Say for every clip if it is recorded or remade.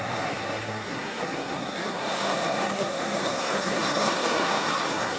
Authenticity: remade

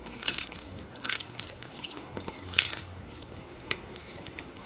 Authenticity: remade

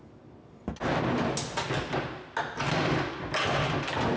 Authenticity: recorded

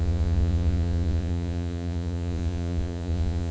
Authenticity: remade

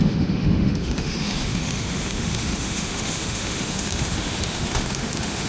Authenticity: remade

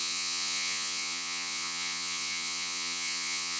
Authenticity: remade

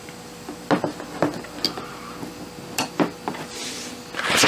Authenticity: recorded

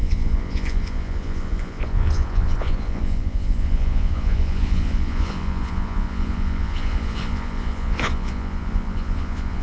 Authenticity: remade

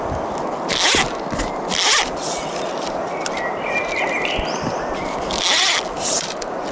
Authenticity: recorded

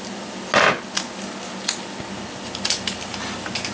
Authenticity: recorded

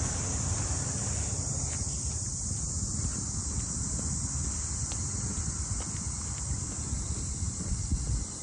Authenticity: recorded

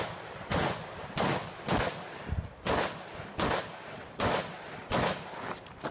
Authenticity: recorded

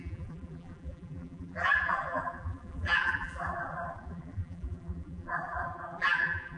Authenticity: remade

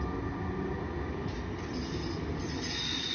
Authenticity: recorded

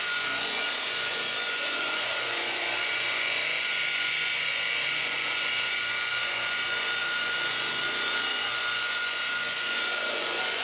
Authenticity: remade